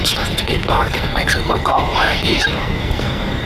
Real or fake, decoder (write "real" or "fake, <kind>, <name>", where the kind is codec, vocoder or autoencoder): fake, codec, SNAC